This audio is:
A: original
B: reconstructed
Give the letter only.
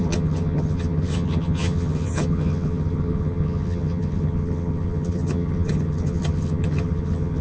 B